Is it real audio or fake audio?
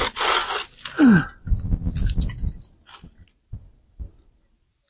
real